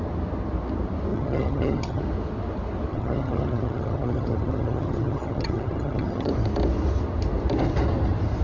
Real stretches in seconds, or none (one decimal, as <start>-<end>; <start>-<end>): 0.0-1.1; 2.0-2.9; 6.3-8.4